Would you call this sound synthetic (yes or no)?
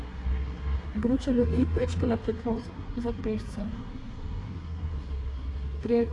yes